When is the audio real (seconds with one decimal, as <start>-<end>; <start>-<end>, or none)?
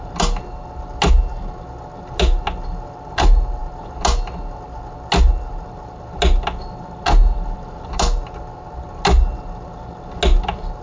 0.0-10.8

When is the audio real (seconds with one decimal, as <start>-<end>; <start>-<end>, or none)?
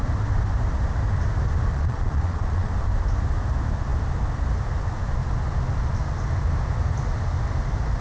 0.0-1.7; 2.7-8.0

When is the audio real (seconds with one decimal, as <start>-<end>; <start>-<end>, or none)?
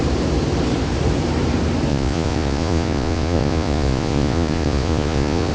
0.0-1.9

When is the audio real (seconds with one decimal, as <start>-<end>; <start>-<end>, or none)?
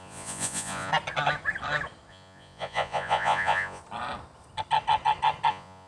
0.9-2.1; 3.8-5.5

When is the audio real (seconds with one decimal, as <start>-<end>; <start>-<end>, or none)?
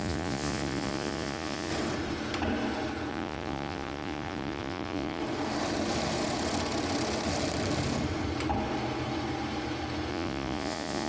1.7-3.1; 5.2-10.1